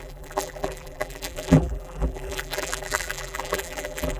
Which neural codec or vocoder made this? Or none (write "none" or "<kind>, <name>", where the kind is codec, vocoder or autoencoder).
vocoder, BigVGAN v2